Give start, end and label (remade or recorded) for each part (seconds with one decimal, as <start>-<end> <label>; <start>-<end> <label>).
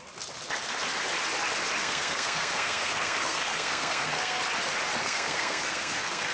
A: 0.0-1.8 recorded; 1.8-4.4 remade; 4.4-5.0 recorded; 5.0-6.3 remade